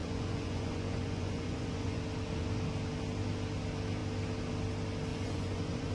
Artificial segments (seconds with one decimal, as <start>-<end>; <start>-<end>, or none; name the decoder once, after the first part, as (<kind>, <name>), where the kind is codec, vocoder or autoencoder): 0.0-2.0 (vocoder, Vocos); 5.1-5.9